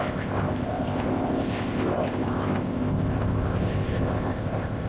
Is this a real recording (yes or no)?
no